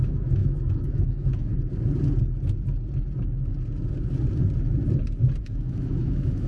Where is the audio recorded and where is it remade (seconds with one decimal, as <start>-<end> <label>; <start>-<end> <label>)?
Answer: 0.0-1.5 remade; 1.5-5.4 recorded; 5.4-6.5 remade